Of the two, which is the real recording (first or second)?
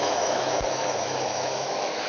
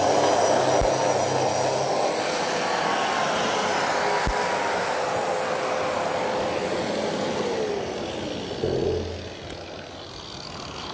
second